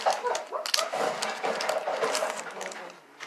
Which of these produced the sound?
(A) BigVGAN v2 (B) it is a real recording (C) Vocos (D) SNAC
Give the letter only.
B